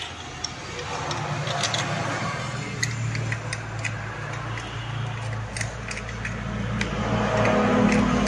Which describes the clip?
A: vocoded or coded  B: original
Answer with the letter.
B